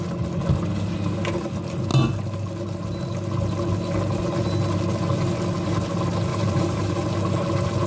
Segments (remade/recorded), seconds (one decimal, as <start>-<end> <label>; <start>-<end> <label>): 0.0-6.3 recorded; 6.3-6.9 remade; 6.9-7.9 recorded